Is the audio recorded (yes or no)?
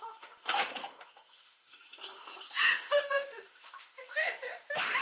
no